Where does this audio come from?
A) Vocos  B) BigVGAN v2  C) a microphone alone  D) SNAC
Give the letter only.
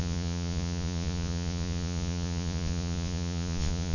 A